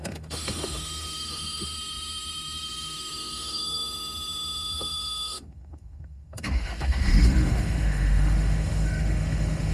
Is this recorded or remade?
remade